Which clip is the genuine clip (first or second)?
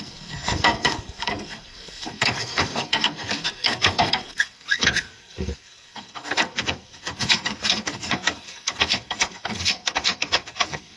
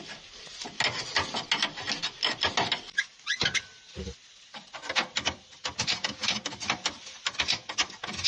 second